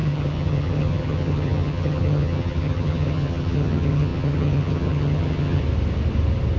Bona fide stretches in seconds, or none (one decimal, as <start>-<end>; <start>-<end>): 5.6-6.6